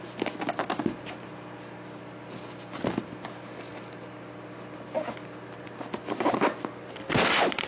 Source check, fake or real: real